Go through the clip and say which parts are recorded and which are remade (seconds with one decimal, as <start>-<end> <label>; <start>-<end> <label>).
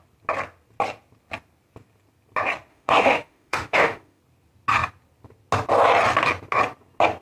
0.0-2.7 recorded; 2.7-4.2 remade; 4.2-7.2 recorded